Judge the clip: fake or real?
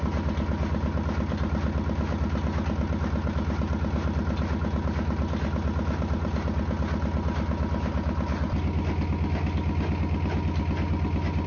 real